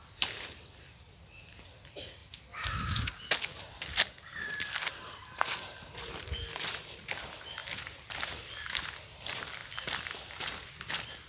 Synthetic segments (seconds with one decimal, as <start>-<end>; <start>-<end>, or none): 0.0-2.2; 3.6-7.6; 8.1-11.3